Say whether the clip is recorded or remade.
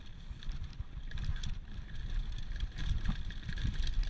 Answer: recorded